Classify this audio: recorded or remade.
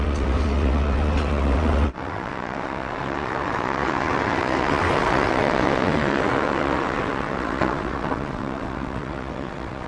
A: remade